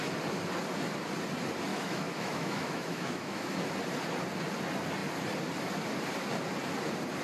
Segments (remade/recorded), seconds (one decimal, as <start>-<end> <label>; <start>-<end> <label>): 0.0-1.7 recorded; 1.7-3.7 remade; 3.7-7.2 recorded